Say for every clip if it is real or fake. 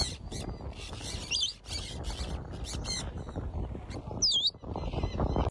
real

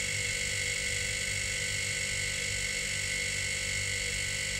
real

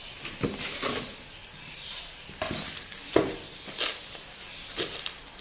real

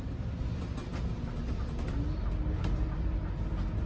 real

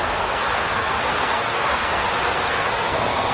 fake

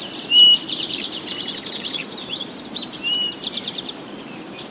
fake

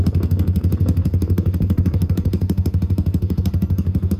fake